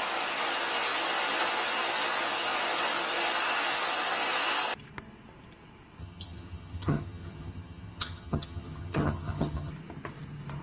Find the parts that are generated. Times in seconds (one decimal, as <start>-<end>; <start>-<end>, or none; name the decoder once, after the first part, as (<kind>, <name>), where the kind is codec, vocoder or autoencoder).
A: 6.0-9.7 (vocoder, HiFi-GAN)